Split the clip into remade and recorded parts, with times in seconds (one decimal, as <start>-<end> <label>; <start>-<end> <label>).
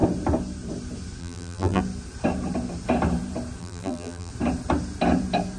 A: 0.0-1.2 recorded; 1.2-1.8 remade; 1.8-3.6 recorded; 3.6-4.3 remade; 4.3-5.6 recorded